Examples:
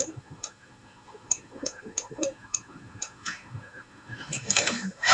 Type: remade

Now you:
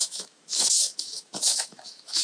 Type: remade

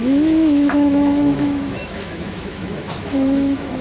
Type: remade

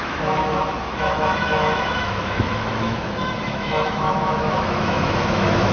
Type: remade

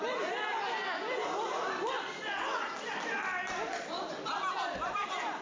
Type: recorded